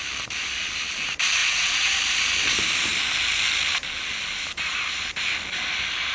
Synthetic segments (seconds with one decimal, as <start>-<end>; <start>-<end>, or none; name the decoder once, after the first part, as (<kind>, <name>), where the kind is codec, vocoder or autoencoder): 1.4-1.9 (vocoder, WaveNeXt)